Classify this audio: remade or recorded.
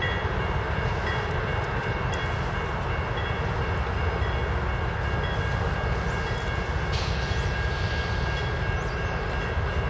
recorded